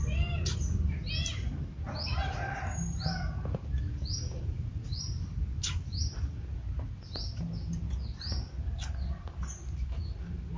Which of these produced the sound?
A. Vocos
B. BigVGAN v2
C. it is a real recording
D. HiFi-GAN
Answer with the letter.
C